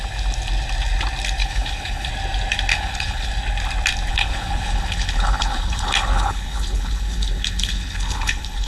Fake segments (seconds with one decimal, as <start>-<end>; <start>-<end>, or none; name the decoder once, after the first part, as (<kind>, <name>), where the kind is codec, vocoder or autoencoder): 1.4-2.1 (codec, HILCodec); 2.7-3.3; 4.1-8.7